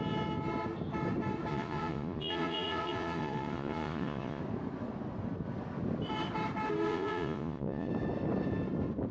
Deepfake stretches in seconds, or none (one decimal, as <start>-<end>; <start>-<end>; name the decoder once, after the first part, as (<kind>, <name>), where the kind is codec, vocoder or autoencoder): 1.5-4.4 (vocoder, Vocos); 6.9-7.9